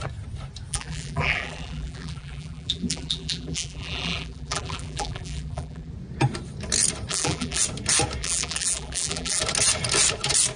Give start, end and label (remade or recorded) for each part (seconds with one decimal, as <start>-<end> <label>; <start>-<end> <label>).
0.0-0.7 recorded; 0.7-5.9 remade; 5.9-7.1 recorded; 7.1-7.6 remade; 7.6-8.2 recorded; 8.2-9.4 remade; 9.4-10.6 recorded

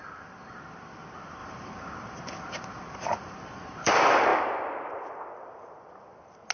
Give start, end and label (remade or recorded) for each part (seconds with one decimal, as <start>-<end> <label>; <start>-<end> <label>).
0.0-1.4 recorded; 1.4-3.9 remade; 3.9-4.3 recorded; 4.3-4.9 remade; 4.9-6.5 recorded

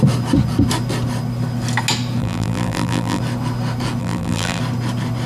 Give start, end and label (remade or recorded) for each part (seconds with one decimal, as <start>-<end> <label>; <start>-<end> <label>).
0.0-2.2 recorded; 2.2-3.2 remade; 3.2-4.0 recorded; 4.0-4.6 remade; 4.6-5.3 recorded

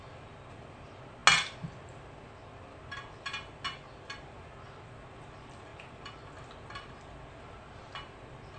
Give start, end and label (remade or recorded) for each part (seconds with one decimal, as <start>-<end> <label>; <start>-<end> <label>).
0.0-5.7 recorded; 5.7-6.3 remade; 6.3-8.6 recorded